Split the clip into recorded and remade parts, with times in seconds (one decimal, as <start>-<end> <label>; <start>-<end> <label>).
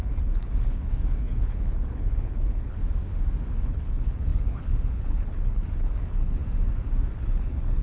0.0-2.8 remade; 2.8-3.6 recorded; 3.6-6.4 remade; 6.4-7.1 recorded; 7.1-7.8 remade